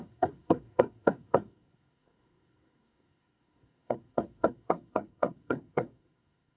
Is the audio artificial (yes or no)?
yes